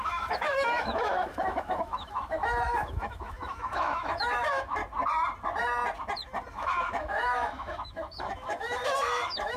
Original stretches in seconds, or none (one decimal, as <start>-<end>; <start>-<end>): 4.8-6.5